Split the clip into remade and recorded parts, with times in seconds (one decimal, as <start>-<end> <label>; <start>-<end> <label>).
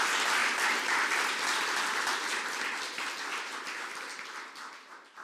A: 0.0-5.2 recorded